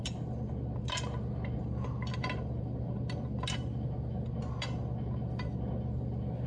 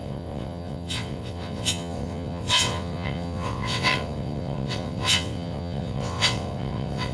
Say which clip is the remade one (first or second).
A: second